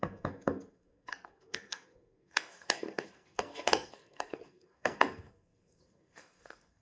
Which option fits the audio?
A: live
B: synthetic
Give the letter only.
B